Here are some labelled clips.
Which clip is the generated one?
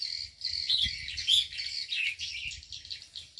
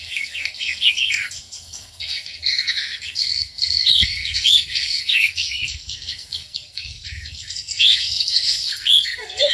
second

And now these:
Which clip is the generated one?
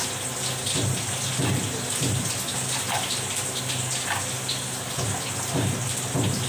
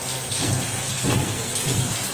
second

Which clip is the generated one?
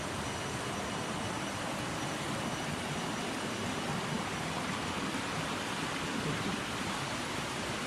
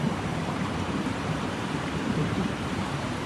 second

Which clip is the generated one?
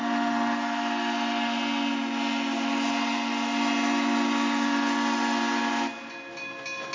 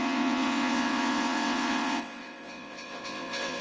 second